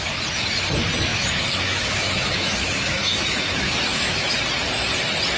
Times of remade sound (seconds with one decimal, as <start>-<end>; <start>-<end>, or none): 1.1-4.3